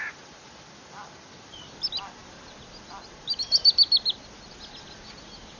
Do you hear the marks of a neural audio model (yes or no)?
no